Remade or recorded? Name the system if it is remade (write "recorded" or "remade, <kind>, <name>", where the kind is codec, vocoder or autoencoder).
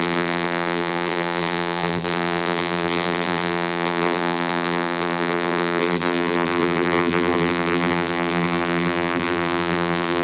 remade, vocoder, BigVGAN v2